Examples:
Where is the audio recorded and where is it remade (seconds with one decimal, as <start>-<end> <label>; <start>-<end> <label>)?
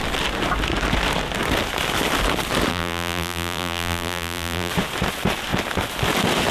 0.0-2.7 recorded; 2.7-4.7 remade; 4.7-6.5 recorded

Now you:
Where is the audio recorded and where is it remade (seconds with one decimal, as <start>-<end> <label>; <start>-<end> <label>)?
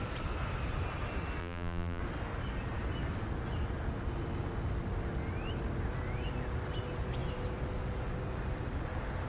0.0-1.4 recorded; 1.4-2.0 remade; 2.0-9.3 recorded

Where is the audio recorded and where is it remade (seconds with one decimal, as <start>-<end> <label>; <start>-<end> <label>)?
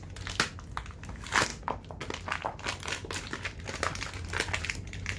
0.0-5.2 recorded